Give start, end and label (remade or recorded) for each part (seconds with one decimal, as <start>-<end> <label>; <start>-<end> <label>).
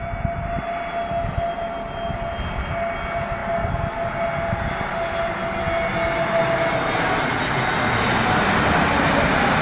0.0-9.6 recorded